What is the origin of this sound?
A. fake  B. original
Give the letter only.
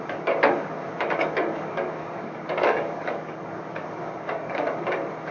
A